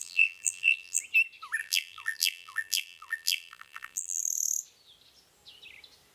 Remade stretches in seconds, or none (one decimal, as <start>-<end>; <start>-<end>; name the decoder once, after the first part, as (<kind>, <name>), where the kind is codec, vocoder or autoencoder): 0.0-1.0 (vocoder, BigVGAN v2); 1.6-4.2